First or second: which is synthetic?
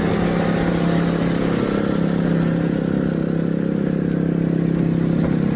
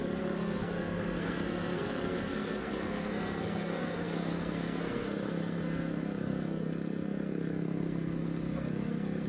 second